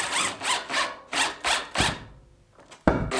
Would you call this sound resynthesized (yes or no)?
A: no